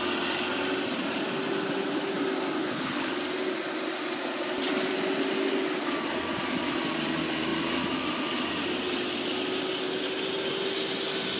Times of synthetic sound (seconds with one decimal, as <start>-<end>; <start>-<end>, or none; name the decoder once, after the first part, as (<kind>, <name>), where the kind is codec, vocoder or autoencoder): 2.6-3.1 (codec, HILCodec)